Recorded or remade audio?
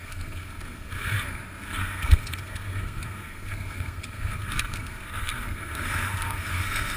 remade